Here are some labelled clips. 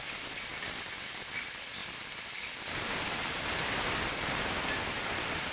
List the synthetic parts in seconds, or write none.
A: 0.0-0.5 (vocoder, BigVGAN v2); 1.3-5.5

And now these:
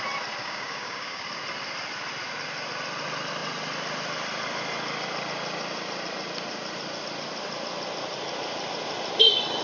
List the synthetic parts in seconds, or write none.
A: 0.4-1.2 (codec, DAC)

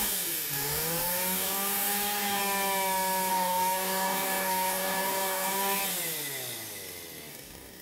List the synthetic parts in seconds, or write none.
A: 0.0-2.4 (codec, DAC); 3.3-5.8; 7.3-7.8

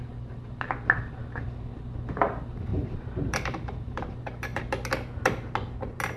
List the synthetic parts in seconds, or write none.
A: 2.7-4.6 (vocoder, BigVGAN v2)

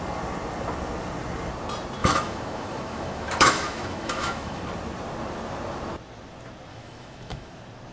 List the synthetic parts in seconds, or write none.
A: 2.0-4.6 (autoencoder, DAC-VAE); 6.7-7.5

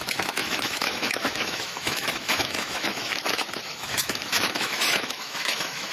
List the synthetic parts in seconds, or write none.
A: 0.0-5.9 (autoencoder, DAC-VAE)

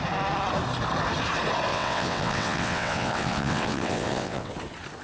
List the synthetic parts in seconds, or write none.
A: 1.7-4.5 (vocoder, WaveNeXt)

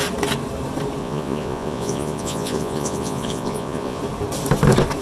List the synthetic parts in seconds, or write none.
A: 1.0-4.0 (vocoder, Vocos)